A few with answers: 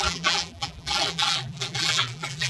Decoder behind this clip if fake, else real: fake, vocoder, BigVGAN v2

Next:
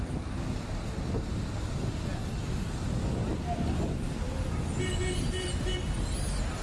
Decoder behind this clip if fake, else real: real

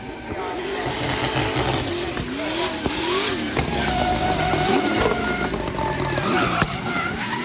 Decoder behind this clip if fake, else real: real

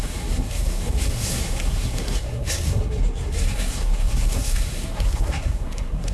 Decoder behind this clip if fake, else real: fake, codec, SNAC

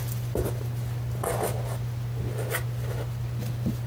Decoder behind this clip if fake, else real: real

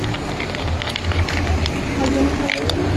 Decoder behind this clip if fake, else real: real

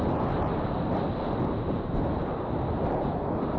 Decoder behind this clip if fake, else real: real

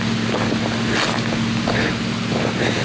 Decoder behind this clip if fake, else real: real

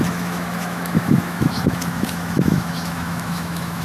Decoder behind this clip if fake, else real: fake, autoencoder, DAC-VAE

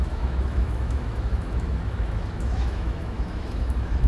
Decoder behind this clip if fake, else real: fake, autoencoder, DAC-VAE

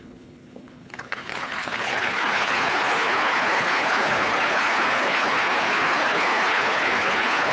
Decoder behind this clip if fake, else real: fake, codec, HILCodec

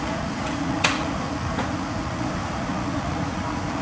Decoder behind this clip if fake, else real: fake, vocoder, Vocos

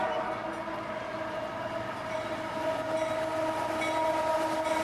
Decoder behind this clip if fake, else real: real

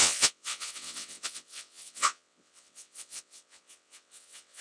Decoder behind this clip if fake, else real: fake, vocoder, WaveNeXt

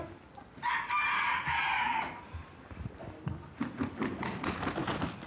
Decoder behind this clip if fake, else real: real